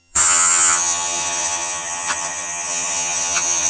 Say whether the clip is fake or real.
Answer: fake